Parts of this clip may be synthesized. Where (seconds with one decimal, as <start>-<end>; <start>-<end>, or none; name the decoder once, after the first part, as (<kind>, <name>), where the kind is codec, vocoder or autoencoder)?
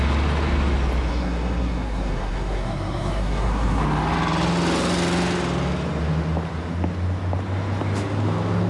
1.1-3.8 (codec, SNAC)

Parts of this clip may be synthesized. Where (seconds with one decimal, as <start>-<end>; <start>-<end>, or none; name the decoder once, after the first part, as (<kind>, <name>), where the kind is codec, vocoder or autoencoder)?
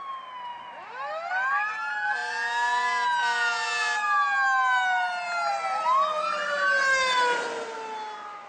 none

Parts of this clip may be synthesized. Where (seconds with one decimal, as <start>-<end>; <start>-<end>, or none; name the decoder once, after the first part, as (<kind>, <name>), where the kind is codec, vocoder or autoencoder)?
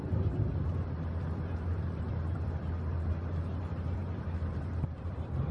0.0-5.5 (vocoder, BigVGAN v2)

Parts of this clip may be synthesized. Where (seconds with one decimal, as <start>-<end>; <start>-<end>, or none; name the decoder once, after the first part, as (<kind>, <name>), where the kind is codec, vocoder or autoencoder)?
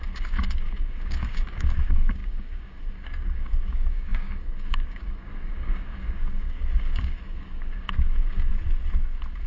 0.0-8.5 (codec, DAC)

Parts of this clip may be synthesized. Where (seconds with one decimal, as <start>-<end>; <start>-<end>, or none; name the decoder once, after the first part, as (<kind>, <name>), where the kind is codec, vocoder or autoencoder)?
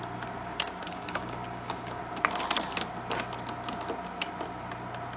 0.8-2.0 (codec, DAC)